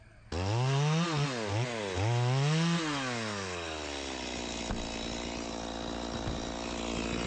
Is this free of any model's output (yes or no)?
yes